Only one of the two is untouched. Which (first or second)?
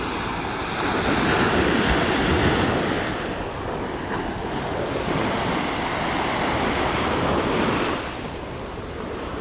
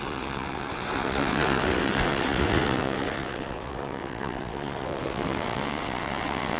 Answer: first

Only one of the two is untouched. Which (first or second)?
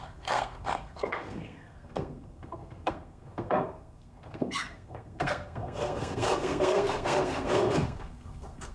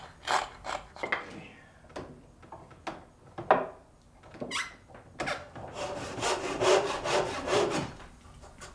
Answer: second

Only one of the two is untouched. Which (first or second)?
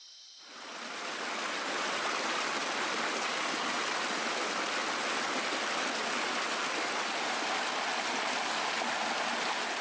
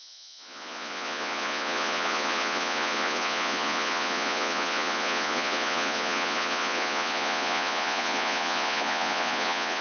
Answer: first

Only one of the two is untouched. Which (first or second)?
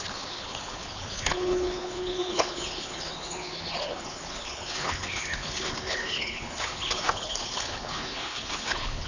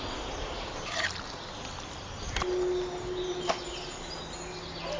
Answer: second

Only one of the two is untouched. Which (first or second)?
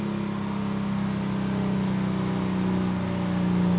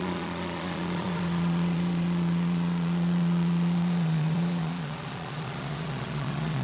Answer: first